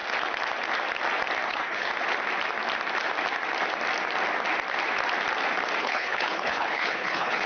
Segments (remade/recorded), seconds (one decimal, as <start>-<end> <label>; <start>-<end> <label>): 0.0-1.5 recorded; 1.5-1.9 remade; 1.9-5.8 recorded; 5.8-7.5 remade